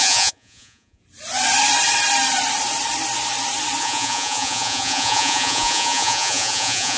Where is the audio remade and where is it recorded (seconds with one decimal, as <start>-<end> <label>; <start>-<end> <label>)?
0.0-1.0 remade; 1.0-3.8 recorded; 3.8-7.0 remade